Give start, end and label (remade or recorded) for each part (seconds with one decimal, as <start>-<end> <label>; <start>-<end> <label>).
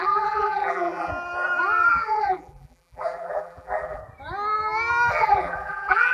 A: 0.0-1.1 remade; 1.1-1.9 recorded; 1.9-4.0 remade; 4.0-5.1 recorded; 5.1-6.1 remade